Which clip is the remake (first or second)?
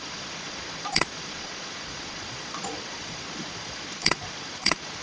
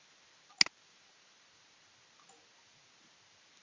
first